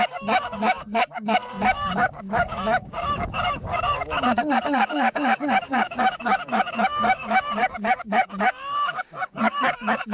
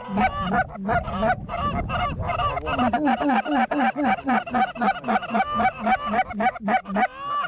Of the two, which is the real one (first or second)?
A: second